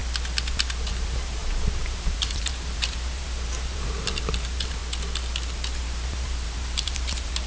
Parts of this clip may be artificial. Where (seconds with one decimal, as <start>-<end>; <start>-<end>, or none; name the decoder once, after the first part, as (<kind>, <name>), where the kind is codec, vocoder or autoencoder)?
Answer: 0.9-4.8 (vocoder, BigVGAN v2); 5.8-7.5